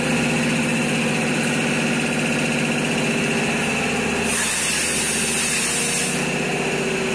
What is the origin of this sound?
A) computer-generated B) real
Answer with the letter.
B